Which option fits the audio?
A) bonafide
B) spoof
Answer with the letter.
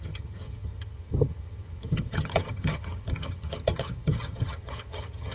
B